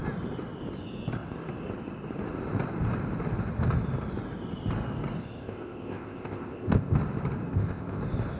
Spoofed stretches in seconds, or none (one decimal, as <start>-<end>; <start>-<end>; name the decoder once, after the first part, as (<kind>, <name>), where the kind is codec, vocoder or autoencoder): 5.2-7.0 (codec, ZipCodec); 7.5-8.0